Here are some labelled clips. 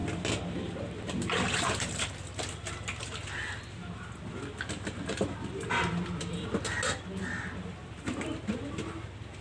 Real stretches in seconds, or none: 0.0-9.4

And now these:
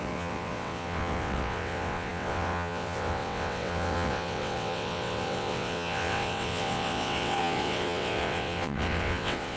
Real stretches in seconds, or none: none

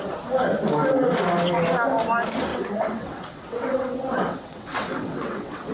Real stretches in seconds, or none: 0.0-2.5